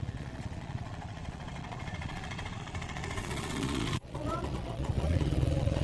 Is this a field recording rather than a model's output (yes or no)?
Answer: no